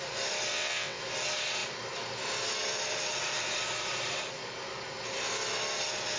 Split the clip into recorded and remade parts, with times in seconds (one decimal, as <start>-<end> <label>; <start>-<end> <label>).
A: 0.0-0.5 recorded; 0.5-1.0 remade; 1.0-6.2 recorded